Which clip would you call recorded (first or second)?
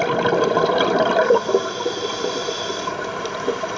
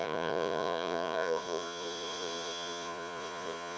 first